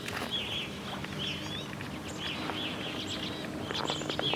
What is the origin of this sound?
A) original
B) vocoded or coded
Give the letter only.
A